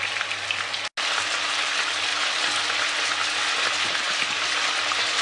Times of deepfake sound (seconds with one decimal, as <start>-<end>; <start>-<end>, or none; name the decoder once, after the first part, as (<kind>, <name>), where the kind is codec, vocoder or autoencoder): none

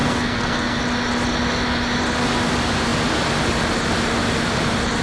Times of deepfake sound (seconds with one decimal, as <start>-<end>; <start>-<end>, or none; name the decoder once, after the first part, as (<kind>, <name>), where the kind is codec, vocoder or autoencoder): 0.0-0.8 (codec, SNAC)